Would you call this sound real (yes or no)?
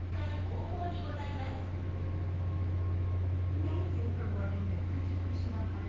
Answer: no